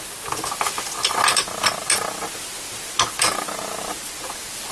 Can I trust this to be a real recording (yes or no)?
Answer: yes